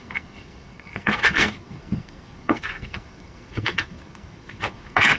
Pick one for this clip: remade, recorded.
remade